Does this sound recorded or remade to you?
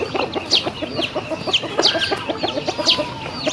recorded